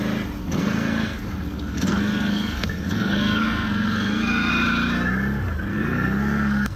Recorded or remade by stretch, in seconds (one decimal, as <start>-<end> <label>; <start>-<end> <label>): 0.0-0.4 recorded; 0.4-4.5 remade; 4.5-5.7 recorded; 5.7-6.8 remade